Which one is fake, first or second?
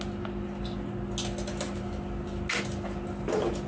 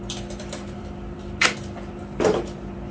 second